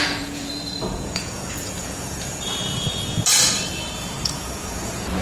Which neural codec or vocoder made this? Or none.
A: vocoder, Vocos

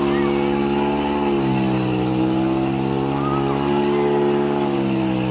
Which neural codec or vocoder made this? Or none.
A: none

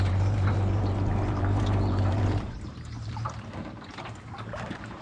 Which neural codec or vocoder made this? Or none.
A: vocoder, BigVGAN v2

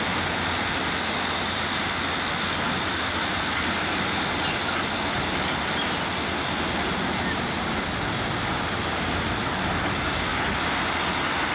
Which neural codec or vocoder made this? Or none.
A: none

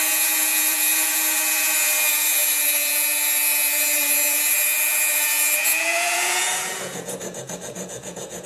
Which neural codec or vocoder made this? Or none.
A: vocoder, Vocos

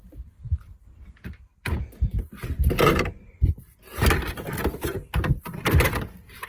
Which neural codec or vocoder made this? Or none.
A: vocoder, BigVGAN v2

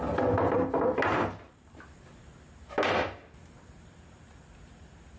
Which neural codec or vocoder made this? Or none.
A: none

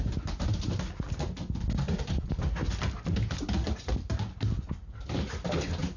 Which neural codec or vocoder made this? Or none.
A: none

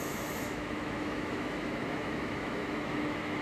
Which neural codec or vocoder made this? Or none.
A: autoencoder, DAC-VAE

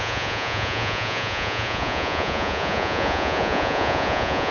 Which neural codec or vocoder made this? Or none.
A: vocoder, Vocos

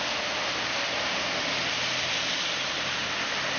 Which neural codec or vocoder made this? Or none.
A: none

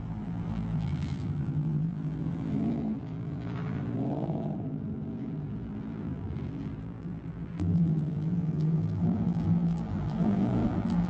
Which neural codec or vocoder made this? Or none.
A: vocoder, BigVGAN v2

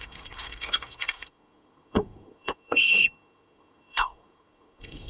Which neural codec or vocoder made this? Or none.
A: codec, SNAC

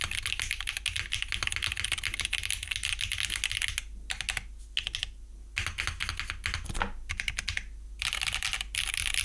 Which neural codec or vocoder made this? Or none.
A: none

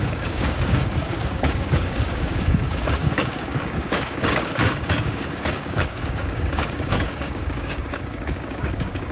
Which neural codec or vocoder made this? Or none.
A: codec, DAC